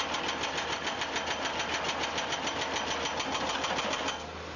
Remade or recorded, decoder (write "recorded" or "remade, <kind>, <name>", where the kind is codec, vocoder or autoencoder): recorded